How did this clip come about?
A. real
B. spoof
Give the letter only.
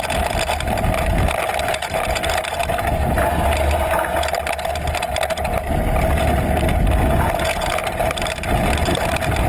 A